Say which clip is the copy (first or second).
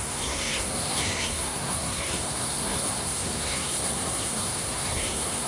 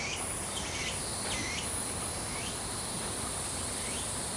first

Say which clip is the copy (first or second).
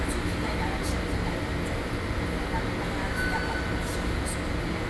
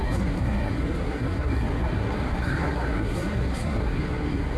second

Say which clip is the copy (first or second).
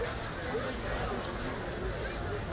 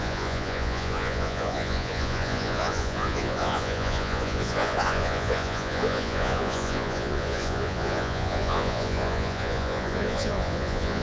second